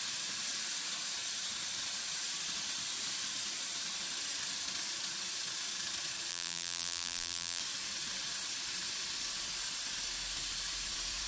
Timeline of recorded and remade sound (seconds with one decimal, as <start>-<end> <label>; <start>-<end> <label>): 0.0-6.3 recorded; 6.3-7.6 remade; 7.6-11.3 recorded